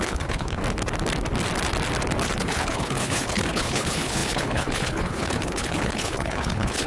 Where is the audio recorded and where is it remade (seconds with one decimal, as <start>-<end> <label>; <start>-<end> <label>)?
0.0-0.6 remade; 0.6-2.4 recorded; 2.4-6.9 remade